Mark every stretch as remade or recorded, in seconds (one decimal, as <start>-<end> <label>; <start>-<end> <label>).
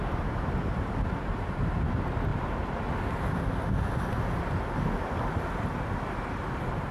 0.0-6.9 recorded